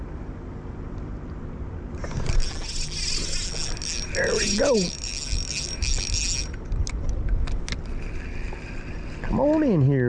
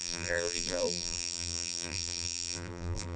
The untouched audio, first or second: first